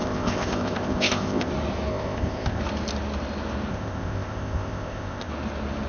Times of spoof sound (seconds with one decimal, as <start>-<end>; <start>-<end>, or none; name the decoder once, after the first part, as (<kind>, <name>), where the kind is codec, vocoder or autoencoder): 0.0-1.5 (codec, ZipCodec); 1.9-2.6; 3.7-5.3

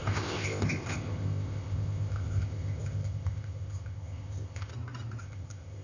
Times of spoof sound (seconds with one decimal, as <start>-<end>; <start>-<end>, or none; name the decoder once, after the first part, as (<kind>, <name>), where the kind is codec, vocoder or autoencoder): 0.0-4.7 (codec, ZipCodec); 5.2-5.8

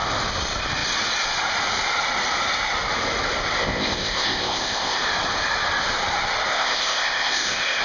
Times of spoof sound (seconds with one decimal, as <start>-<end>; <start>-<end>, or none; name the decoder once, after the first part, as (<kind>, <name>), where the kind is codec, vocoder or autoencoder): 3.6-5.0 (codec, ZipCodec); 6.5-7.8

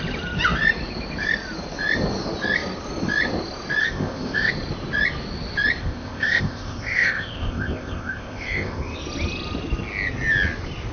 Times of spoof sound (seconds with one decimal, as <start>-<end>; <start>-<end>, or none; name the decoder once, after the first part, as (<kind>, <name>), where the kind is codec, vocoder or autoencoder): 3.8-4.5 (codec, ZipCodec); 5.8-9.0

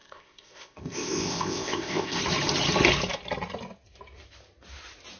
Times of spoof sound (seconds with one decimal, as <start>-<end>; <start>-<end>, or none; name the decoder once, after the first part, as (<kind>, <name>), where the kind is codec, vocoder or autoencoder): 0.0-2.2 (codec, ZipCodec)